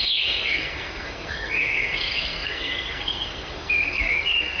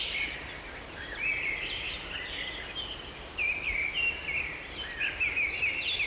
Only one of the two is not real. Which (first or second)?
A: first